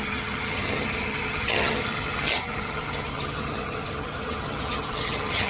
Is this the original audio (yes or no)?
no